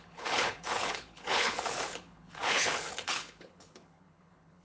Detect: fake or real fake